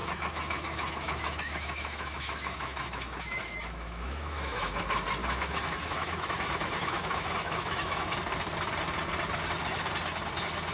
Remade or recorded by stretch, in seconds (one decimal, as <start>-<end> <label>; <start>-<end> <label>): 0.0-4.8 remade; 4.8-5.2 recorded; 5.2-8.2 remade; 8.2-10.7 recorded